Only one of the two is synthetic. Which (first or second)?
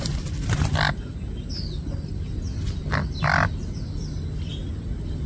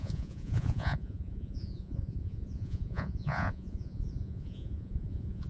second